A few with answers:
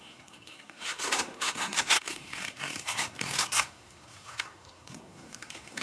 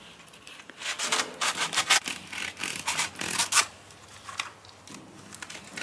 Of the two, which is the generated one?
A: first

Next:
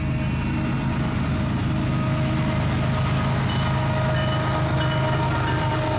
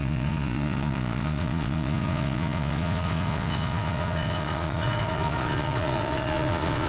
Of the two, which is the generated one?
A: second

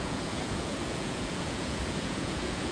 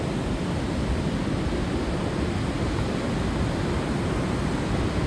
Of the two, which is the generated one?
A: first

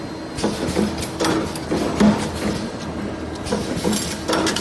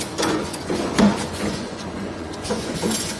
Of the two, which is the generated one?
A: second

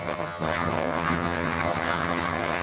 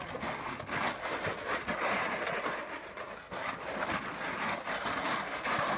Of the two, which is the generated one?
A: first